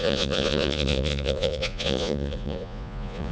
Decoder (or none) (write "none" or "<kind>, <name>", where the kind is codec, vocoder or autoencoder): vocoder, Vocos